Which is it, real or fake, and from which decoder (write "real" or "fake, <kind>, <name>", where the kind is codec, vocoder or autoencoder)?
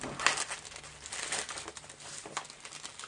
real